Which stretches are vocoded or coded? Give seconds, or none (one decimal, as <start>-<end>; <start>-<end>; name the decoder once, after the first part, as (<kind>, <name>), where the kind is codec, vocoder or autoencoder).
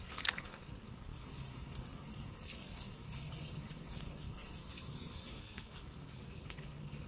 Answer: 0.0-7.1 (codec, SNAC)